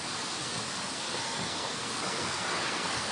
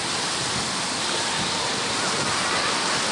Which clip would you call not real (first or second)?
first